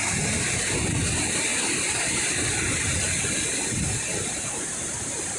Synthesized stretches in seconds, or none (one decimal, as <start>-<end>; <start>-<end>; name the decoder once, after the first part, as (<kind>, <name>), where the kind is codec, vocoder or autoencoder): none